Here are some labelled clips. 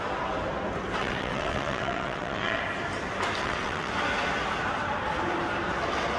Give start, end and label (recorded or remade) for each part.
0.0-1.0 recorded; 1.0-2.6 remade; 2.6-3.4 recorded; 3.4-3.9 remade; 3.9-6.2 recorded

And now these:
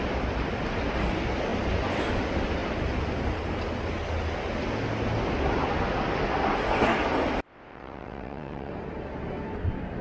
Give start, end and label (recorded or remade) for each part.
0.0-7.7 recorded; 7.7-8.7 remade; 8.7-10.0 recorded

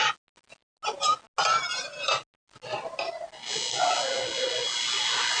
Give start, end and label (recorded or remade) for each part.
0.0-5.4 recorded

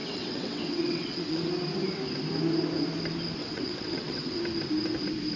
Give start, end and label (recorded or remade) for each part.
0.0-1.5 remade; 1.5-3.4 recorded; 3.4-4.4 remade; 4.4-5.4 recorded

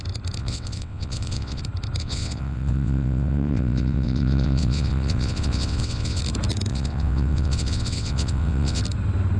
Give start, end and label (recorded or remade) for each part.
0.0-0.4 recorded; 0.4-1.6 remade; 1.6-2.0 recorded; 2.0-6.2 remade; 6.2-6.7 recorded; 6.7-8.8 remade; 8.8-9.4 recorded

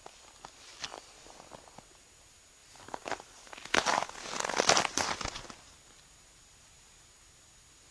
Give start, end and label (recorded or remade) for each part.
0.0-7.9 recorded

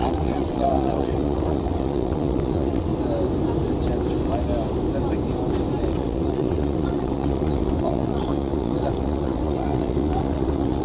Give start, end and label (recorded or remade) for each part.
0.0-2.9 remade; 2.9-5.9 recorded; 5.9-10.8 remade

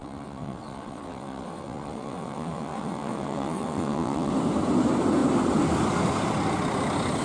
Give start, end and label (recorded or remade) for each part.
0.0-4.3 remade; 4.3-7.2 recorded